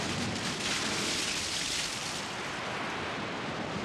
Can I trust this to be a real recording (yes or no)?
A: yes